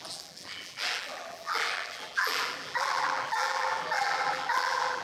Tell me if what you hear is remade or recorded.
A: remade